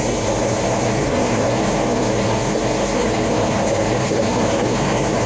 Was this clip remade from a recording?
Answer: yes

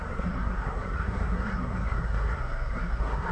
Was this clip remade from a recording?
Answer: yes